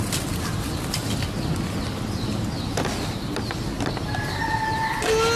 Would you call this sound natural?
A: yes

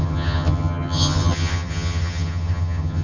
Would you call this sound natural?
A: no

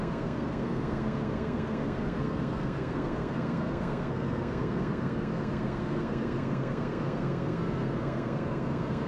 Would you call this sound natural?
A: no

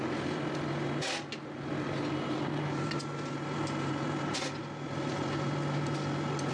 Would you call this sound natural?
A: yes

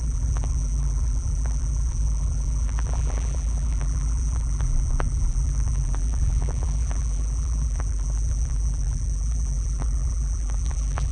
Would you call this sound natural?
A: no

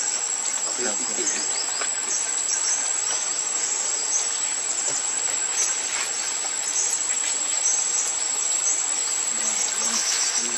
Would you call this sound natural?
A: yes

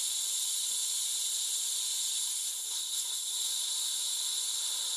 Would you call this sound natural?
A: yes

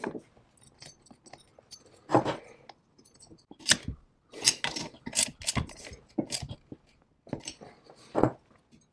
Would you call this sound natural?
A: yes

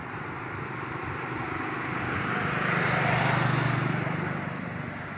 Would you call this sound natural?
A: yes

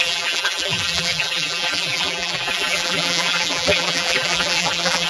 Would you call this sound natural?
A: no